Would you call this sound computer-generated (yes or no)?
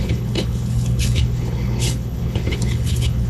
yes